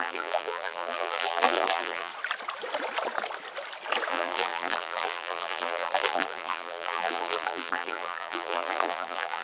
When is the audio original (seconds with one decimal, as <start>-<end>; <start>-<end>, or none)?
2.1-4.1